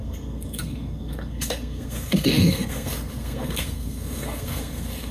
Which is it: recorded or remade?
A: remade